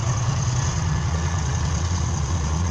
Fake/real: fake